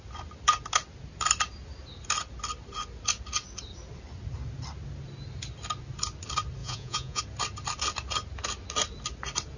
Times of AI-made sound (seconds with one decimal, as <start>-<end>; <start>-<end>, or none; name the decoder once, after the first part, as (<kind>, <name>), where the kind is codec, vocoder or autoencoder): 6.6-7.2 (vocoder, Vocos)